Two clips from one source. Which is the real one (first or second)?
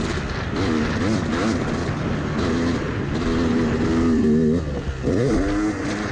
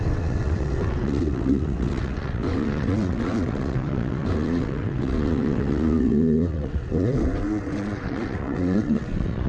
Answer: first